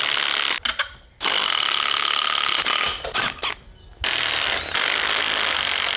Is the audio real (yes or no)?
yes